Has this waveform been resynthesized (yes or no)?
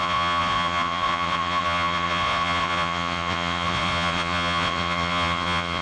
yes